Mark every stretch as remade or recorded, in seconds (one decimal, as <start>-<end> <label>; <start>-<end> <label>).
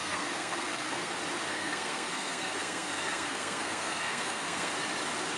0.0-1.1 remade; 1.1-1.5 recorded; 1.5-4.7 remade; 4.7-5.4 recorded